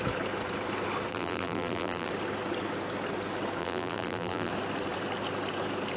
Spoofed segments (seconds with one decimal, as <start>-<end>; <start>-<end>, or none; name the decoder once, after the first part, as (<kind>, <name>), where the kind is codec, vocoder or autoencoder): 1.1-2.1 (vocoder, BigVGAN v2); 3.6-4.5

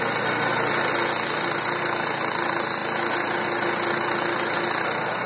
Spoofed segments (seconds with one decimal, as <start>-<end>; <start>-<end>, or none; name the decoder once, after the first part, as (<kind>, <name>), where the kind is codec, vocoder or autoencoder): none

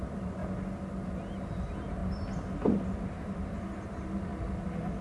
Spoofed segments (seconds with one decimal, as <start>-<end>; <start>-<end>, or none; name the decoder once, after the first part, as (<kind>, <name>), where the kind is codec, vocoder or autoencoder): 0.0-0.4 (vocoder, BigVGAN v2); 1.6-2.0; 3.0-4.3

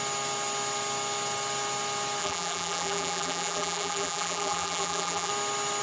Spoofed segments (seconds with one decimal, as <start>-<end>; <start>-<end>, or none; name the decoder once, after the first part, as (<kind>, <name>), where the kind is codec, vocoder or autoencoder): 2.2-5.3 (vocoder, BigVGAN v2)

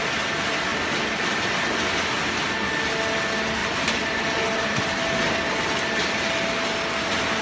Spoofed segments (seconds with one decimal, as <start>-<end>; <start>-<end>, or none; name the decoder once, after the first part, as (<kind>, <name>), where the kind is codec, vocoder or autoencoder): 3.6-4.8 (vocoder, BigVGAN v2)